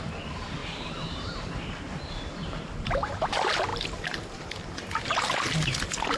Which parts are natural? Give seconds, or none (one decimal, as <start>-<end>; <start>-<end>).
0.0-0.6; 3.3-3.7; 4.4-6.2